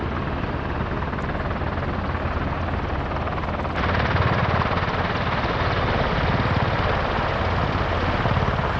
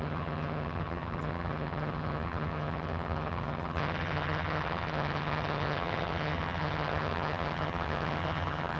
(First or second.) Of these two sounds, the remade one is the second